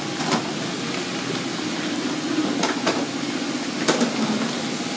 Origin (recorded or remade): recorded